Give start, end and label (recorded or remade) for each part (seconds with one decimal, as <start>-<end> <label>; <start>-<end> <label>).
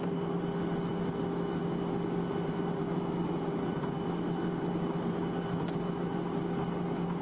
0.0-0.9 recorded; 0.9-1.6 remade; 1.6-2.8 recorded; 2.8-3.3 remade; 3.3-7.2 recorded